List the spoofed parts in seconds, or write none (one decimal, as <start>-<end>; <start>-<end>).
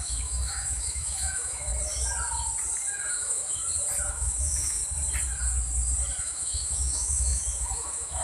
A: 0.0-1.7; 3.1-3.6; 4.1-4.8; 6.2-8.2